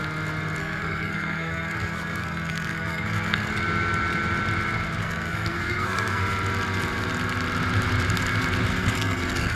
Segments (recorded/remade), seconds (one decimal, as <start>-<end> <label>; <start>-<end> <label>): 0.0-0.6 recorded; 0.6-3.5 remade; 3.5-5.0 recorded; 5.0-6.2 remade; 6.2-8.7 recorded; 8.7-9.6 remade